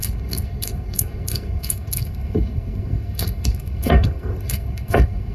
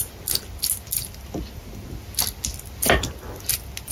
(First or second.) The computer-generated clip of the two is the first